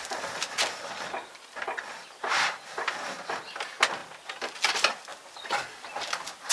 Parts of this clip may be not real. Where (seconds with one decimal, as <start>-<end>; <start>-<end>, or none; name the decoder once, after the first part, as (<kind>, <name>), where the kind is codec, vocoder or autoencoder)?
none